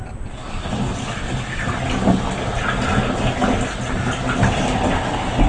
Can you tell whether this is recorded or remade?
recorded